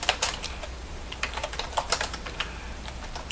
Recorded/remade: remade